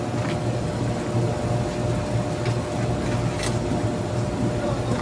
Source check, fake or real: real